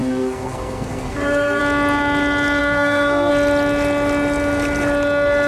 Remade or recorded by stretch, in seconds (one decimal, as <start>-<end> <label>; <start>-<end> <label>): 0.0-1.6 remade; 1.6-2.6 recorded; 2.6-3.3 remade; 3.3-5.5 recorded

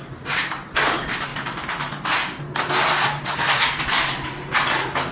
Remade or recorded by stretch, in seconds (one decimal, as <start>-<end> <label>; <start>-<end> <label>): 0.0-3.3 recorded; 3.3-3.8 remade; 3.8-5.1 recorded

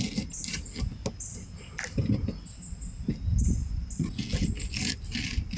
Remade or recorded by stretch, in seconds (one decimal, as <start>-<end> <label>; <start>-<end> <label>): 0.0-5.6 recorded

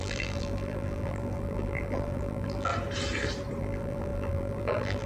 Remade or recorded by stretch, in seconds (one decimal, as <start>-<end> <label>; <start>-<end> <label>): 0.0-2.7 remade; 2.7-3.6 recorded; 3.6-5.1 remade